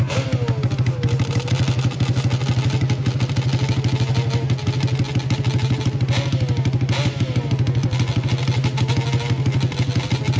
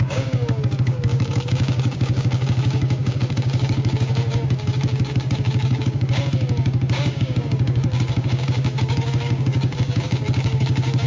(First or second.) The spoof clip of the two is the second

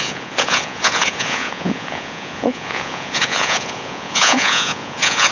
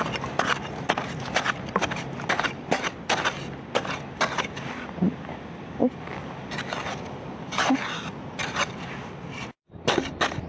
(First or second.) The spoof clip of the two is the first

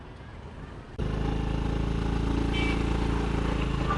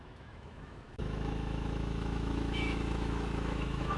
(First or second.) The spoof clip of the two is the second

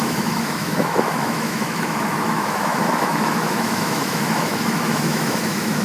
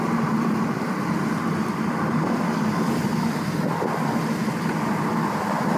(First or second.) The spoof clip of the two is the first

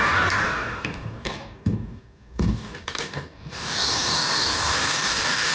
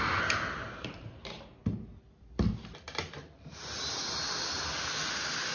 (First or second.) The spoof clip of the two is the first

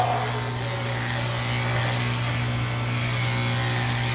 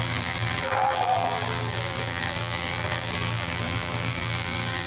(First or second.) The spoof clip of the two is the second